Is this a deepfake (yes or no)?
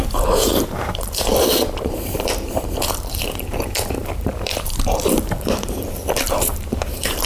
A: yes